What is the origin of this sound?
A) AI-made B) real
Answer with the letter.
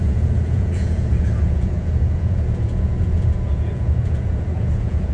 A